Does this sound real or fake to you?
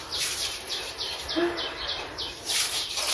fake